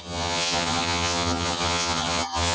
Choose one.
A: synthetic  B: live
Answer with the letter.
A